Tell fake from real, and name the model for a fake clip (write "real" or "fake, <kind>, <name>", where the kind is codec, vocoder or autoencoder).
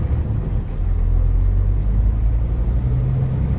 real